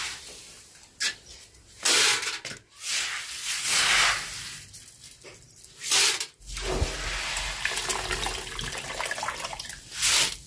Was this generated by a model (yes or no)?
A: no